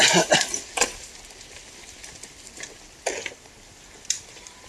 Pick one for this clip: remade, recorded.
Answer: recorded